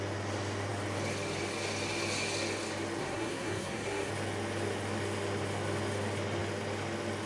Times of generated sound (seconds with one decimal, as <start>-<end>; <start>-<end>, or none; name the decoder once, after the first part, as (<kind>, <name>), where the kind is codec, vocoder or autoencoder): 3.0-4.1 (codec, SNAC)